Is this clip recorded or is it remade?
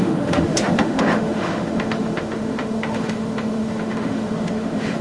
remade